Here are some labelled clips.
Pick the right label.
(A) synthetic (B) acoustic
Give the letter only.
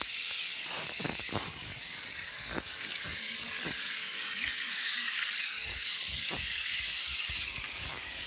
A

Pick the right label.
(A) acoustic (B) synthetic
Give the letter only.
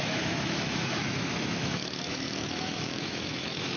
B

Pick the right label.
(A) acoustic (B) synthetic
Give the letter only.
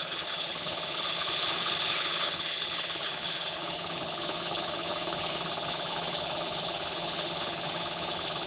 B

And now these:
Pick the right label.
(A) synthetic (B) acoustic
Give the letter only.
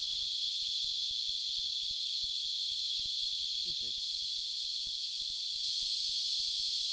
B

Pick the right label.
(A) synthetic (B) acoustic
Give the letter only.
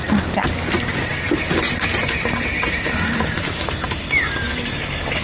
B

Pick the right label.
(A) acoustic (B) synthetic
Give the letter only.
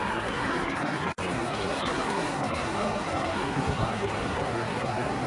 B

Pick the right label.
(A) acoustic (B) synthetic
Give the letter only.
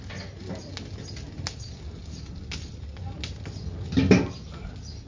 A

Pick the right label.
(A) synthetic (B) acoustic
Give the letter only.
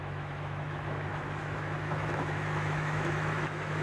A